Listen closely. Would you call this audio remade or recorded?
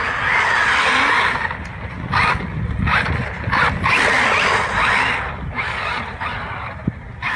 recorded